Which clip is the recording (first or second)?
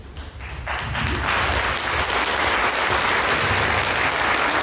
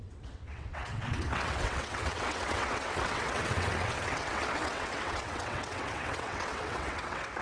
first